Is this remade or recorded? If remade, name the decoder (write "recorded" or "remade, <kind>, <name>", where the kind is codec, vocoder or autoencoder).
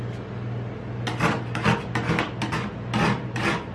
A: recorded